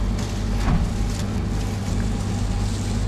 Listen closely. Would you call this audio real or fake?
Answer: real